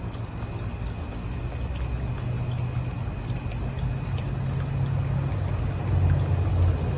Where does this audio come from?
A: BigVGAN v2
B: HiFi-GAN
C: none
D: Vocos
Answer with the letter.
C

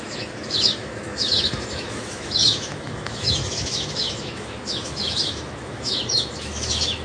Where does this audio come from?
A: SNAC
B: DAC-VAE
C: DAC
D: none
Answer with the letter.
B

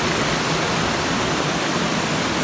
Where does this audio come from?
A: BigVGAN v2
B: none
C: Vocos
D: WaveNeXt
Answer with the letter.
B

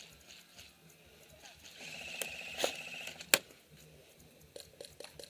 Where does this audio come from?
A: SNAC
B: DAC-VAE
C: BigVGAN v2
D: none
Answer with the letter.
D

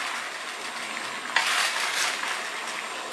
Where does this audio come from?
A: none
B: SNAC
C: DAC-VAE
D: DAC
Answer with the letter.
A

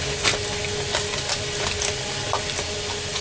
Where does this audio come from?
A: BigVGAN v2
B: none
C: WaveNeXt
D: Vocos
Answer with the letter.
B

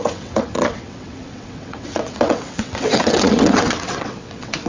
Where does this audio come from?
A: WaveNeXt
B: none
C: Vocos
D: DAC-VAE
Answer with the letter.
A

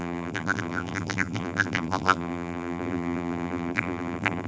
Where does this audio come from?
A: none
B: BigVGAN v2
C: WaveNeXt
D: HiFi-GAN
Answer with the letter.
B